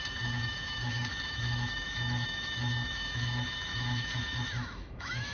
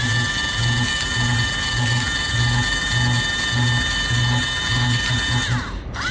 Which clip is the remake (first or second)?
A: first